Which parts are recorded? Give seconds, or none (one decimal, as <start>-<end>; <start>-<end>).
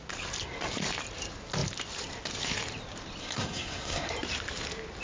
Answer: 0.0-3.2; 4.1-5.0